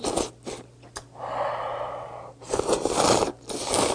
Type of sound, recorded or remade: recorded